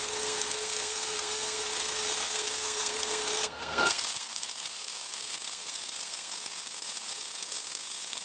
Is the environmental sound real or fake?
fake